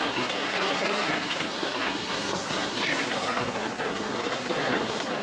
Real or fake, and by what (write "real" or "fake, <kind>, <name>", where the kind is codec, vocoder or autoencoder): fake, codec, SNAC